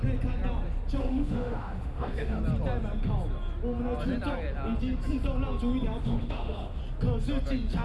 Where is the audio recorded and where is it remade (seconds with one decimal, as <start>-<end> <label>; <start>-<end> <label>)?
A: 0.0-1.0 recorded; 1.0-2.4 remade; 2.4-6.0 recorded; 6.0-6.8 remade; 6.8-7.8 recorded